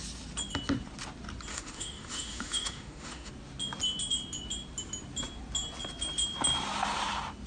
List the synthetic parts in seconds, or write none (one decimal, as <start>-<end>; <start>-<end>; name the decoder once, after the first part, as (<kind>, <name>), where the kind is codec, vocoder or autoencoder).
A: 1.5-3.3 (autoencoder, DAC-VAE)